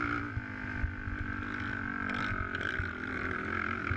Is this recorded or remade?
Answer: recorded